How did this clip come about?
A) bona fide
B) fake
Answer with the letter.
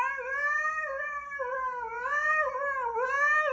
A